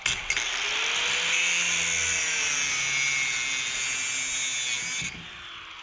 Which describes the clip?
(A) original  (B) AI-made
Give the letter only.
A